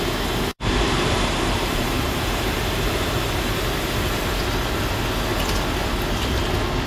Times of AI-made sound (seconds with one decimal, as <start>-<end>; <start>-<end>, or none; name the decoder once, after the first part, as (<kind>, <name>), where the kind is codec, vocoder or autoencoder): 0.5-4.5 (vocoder, BigVGAN v2)